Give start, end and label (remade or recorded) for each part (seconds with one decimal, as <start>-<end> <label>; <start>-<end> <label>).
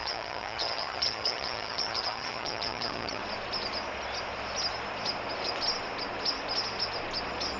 0.0-3.2 remade; 3.2-7.6 recorded